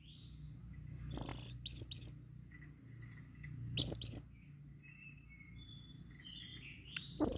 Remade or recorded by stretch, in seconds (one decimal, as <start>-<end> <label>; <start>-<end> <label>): 0.0-6.5 recorded; 6.5-7.4 remade